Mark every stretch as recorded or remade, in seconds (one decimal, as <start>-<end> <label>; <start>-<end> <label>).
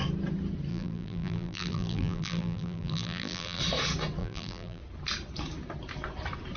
0.0-0.7 recorded; 0.7-3.6 remade; 3.6-4.2 recorded; 4.2-4.8 remade; 4.8-6.6 recorded